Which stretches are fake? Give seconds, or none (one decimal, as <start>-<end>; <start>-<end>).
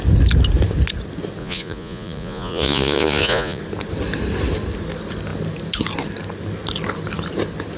1.4-3.6